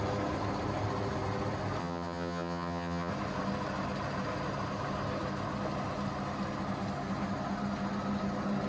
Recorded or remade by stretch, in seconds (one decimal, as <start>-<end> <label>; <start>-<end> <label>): 0.0-1.8 recorded; 1.8-3.1 remade; 3.1-8.7 recorded